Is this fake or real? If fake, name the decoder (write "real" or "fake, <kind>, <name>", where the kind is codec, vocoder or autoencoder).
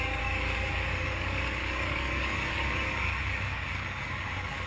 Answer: fake, codec, DAC